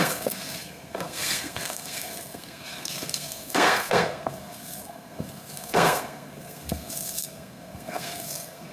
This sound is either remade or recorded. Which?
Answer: remade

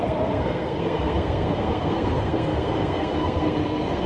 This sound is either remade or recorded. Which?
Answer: remade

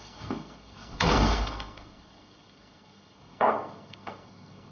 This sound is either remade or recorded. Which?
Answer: remade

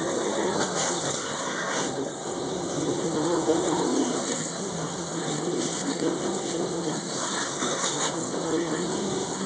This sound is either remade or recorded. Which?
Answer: remade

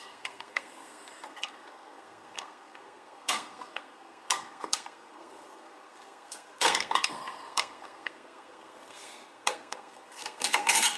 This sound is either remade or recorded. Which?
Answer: remade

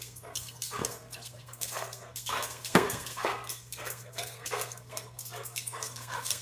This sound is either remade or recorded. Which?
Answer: remade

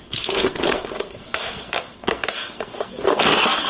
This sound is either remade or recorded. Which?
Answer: remade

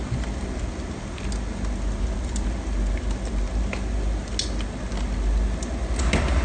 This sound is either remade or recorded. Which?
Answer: recorded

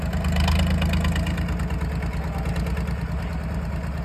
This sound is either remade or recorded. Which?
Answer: recorded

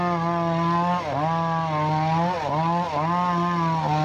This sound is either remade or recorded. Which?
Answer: recorded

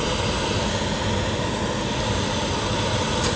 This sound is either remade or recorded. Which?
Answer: recorded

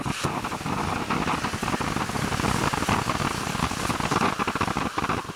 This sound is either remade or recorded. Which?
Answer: recorded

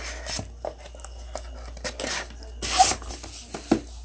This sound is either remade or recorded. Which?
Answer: recorded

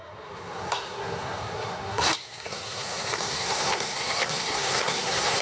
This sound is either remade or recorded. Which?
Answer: remade